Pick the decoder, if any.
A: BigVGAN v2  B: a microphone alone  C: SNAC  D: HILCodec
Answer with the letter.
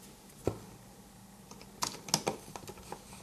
B